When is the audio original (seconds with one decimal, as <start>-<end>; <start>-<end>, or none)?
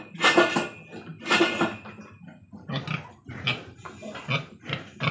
0.0-5.1